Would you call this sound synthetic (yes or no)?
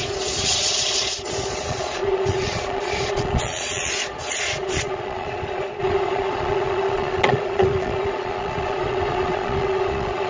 yes